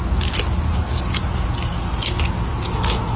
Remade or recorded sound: recorded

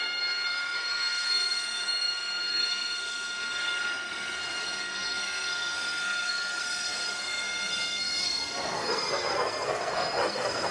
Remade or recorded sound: remade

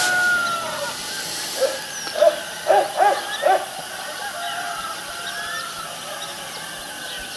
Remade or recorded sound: recorded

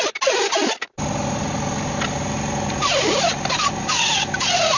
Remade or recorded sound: recorded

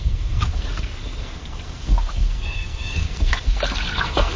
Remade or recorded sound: remade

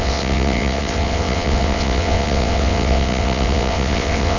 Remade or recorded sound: remade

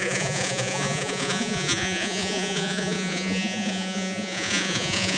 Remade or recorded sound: remade